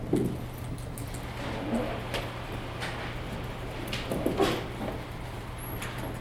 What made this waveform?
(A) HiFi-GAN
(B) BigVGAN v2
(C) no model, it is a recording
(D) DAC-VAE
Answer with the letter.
C